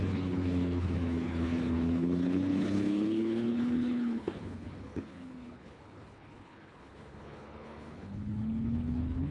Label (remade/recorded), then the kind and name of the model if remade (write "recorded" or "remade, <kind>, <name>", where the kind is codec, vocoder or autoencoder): remade, codec, HILCodec